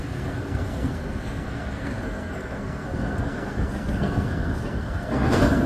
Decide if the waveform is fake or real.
fake